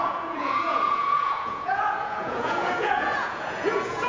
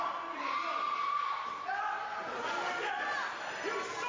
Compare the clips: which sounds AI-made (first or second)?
first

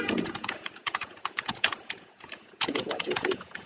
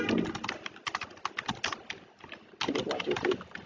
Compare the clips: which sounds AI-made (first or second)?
first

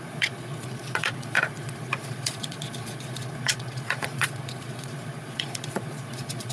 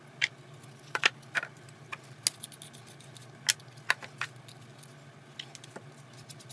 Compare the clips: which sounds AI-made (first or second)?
first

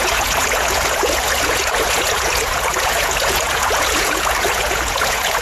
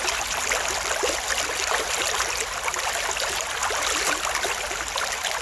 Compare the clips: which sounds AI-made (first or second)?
first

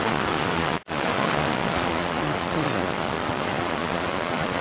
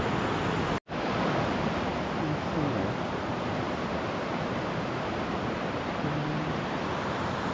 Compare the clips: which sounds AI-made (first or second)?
first